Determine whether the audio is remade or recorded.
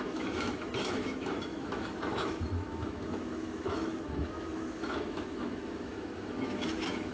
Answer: remade